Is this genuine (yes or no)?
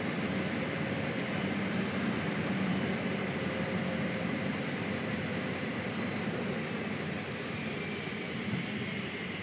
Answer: no